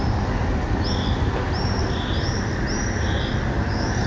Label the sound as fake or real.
real